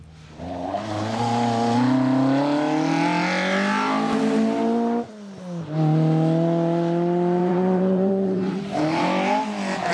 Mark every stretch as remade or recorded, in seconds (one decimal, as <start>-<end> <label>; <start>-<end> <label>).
0.0-7.4 recorded; 7.4-8.6 remade; 8.6-9.9 recorded